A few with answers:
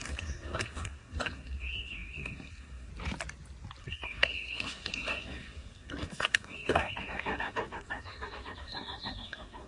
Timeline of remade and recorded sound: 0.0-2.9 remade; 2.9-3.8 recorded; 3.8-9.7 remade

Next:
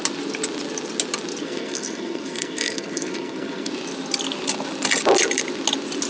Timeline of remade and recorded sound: 0.0-1.4 recorded; 1.4-3.7 remade; 3.7-6.1 recorded

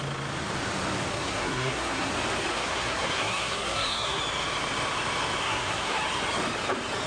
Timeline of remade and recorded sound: 0.0-1.1 recorded; 1.1-2.1 remade; 2.1-2.5 recorded; 2.5-4.2 remade; 4.2-5.4 recorded; 5.4-6.0 remade; 6.0-7.1 recorded

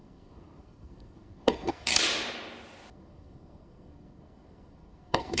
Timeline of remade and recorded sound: 0.0-1.9 remade; 1.9-2.9 recorded; 2.9-5.4 remade

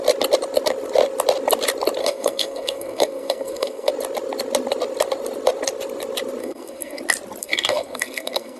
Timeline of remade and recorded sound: 0.0-2.0 recorded; 2.0-3.9 remade; 3.9-6.4 recorded; 6.4-7.0 remade; 7.0-7.4 recorded; 7.4-8.6 remade